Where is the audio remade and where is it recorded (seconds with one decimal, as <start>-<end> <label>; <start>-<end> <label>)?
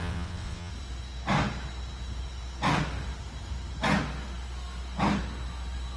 0.0-0.7 remade; 0.7-6.0 recorded